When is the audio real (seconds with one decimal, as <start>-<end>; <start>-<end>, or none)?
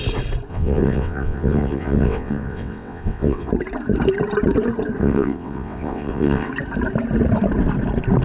0.0-0.5; 3.5-5.0; 6.5-8.2